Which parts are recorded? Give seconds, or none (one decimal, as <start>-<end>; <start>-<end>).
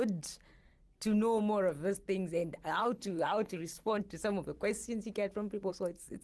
0.0-2.8; 4.0-6.2